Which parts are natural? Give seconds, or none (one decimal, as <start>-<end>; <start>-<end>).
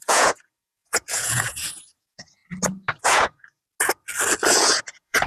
2.4-3.0; 3.6-4.5